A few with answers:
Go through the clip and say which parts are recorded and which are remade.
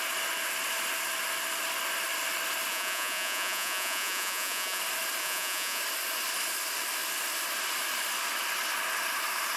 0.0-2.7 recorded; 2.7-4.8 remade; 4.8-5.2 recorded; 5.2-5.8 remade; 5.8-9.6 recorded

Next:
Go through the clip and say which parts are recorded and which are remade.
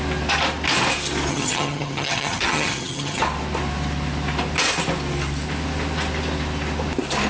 0.0-1.3 recorded; 1.3-3.2 remade; 3.2-7.3 recorded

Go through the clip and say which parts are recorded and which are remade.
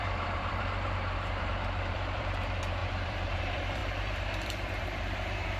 0.0-5.6 remade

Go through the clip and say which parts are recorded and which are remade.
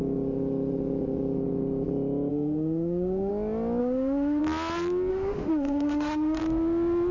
0.0-2.3 recorded; 2.3-3.3 remade; 3.3-3.8 recorded; 3.8-4.4 remade; 4.4-5.1 recorded; 5.1-6.4 remade; 6.4-7.1 recorded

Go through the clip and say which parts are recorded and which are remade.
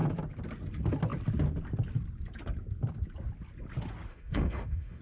0.0-4.1 recorded; 4.1-5.0 remade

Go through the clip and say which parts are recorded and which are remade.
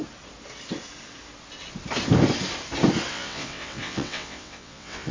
0.0-3.1 recorded; 3.1-5.1 remade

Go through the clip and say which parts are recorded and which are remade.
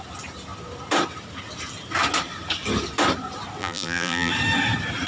0.0-3.6 recorded; 3.6-4.3 remade; 4.3-5.1 recorded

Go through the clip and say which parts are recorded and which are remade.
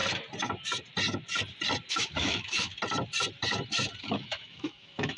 0.0-1.9 recorded; 1.9-2.7 remade; 2.7-4.0 recorded; 4.0-5.2 remade